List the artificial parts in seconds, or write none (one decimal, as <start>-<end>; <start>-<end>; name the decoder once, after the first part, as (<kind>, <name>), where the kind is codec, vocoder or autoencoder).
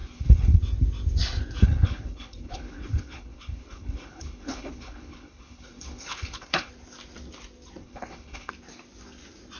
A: 0.0-0.6 (codec, HILCodec); 1.6-6.7; 7.8-8.5